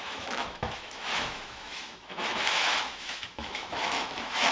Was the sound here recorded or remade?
remade